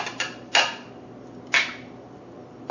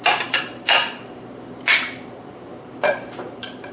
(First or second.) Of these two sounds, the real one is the first